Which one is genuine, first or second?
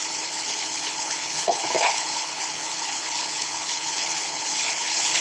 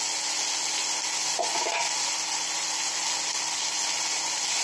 second